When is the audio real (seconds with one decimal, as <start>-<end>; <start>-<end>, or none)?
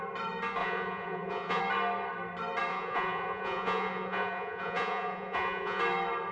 0.0-0.6; 1.6-2.7; 5.8-6.3